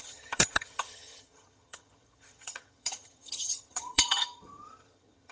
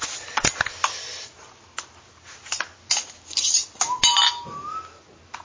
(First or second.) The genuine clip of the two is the second